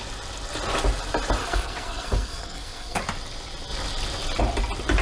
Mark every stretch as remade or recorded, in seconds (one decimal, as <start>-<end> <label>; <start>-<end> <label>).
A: 0.0-1.4 recorded; 1.4-3.0 remade; 3.0-5.0 recorded